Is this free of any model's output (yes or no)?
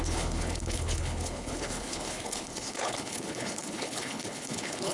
no